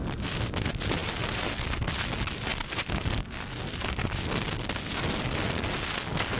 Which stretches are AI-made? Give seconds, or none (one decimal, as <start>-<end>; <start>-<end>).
none